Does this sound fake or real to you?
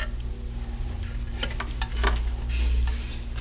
real